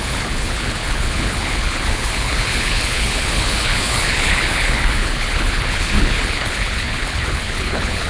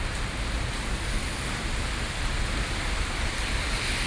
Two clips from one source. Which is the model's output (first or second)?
first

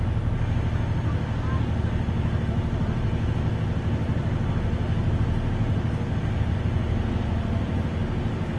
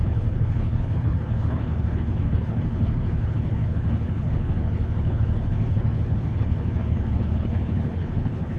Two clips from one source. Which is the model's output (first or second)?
second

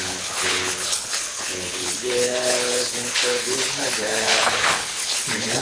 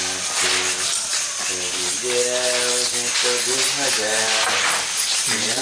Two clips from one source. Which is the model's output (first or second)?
first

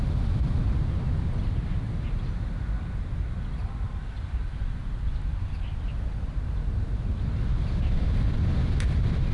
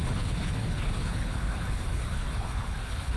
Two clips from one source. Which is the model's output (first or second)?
second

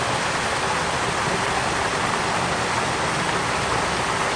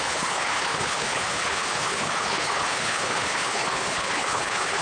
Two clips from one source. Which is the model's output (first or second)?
second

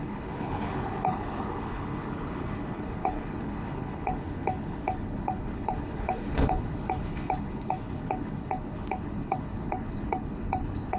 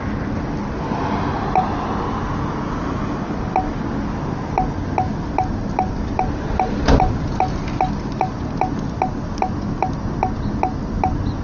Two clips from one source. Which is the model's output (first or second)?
first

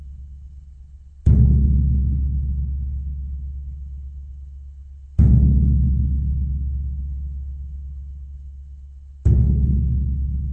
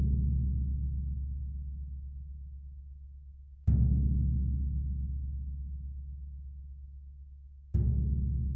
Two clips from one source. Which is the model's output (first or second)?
first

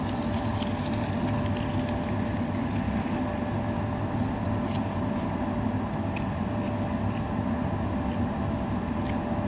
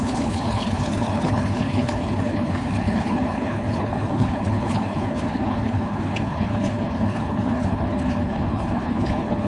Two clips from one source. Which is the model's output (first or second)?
second